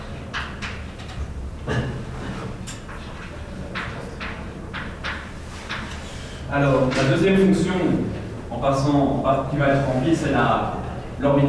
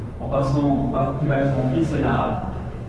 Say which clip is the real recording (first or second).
first